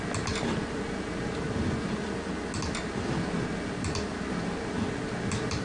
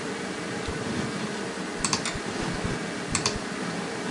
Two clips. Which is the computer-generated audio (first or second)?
second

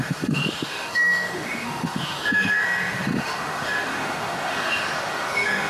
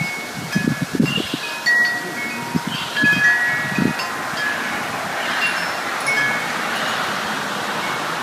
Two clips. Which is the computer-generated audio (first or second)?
first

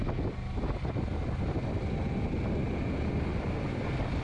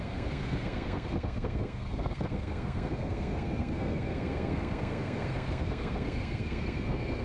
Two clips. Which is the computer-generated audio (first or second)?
second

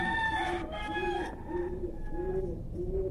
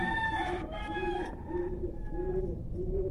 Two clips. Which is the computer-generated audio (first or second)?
second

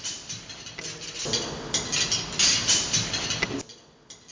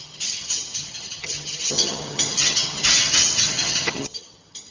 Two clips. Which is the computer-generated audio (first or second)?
second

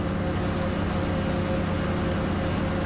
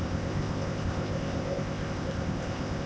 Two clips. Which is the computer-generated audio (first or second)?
second